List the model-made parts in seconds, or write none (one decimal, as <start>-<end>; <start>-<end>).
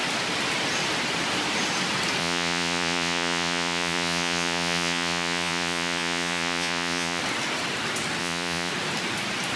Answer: 2.2-7.2; 8.2-8.7